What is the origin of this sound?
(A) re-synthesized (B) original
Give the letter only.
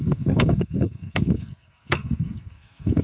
A